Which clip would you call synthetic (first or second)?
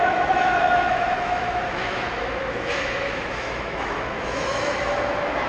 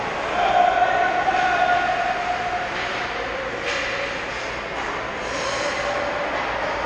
first